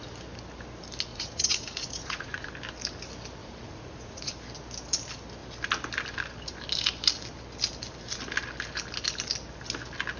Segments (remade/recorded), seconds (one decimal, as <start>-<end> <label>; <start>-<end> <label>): 0.0-1.1 recorded; 1.1-2.5 remade; 2.5-3.4 recorded; 3.4-4.3 remade; 4.3-10.2 recorded